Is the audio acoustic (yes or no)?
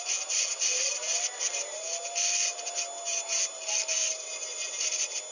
yes